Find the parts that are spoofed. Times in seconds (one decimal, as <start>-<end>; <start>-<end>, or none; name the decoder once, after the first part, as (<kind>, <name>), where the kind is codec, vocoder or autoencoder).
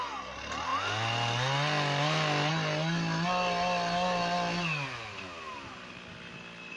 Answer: none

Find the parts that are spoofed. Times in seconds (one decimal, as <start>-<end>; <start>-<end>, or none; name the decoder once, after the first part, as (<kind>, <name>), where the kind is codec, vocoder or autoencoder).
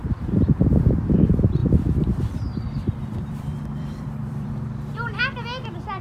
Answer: 0.0-0.7 (vocoder, BigVGAN v2); 1.6-5.2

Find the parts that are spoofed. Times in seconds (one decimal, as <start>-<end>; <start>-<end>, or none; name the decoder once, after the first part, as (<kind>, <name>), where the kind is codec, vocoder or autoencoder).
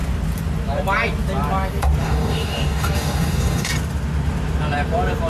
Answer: 2.0-3.7 (codec, DAC)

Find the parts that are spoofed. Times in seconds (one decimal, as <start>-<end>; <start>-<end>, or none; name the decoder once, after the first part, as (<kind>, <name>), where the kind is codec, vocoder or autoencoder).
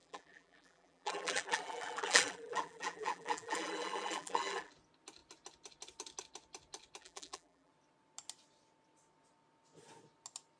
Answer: 0.0-4.7 (vocoder, BigVGAN v2); 7.0-7.7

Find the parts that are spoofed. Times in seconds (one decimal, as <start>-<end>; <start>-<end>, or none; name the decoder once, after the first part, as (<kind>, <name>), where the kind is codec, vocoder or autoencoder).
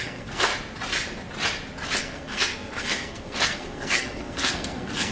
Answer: 0.0-0.5 (codec, SNAC); 2.0-5.1